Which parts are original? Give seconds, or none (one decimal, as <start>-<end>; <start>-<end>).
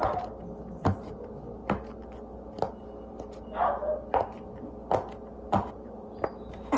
0.0-6.8